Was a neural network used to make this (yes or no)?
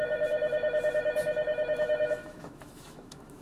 yes